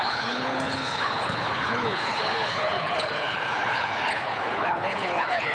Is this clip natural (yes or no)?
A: no